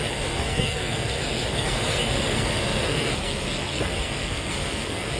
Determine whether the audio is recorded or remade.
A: remade